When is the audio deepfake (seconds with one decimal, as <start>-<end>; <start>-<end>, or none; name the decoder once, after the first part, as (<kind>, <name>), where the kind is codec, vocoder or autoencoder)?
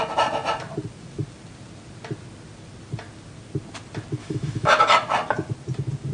4.2-4.8 (autoencoder, DAC-VAE)